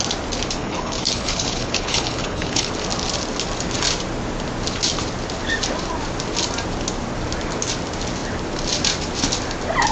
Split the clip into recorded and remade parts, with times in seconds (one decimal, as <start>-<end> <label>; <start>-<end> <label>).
0.0-0.6 recorded; 0.6-2.7 remade; 2.7-9.9 recorded